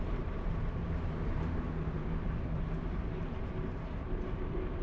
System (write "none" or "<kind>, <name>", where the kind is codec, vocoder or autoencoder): vocoder, BigVGAN v2